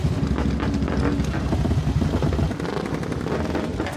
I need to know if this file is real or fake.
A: real